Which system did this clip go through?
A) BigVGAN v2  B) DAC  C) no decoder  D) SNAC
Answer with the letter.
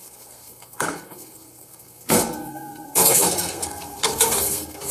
D